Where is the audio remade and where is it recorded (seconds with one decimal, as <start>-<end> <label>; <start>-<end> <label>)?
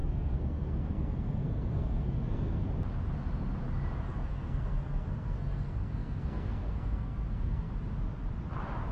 0.0-2.7 remade; 2.7-4.1 recorded; 4.1-7.7 remade; 7.7-8.9 recorded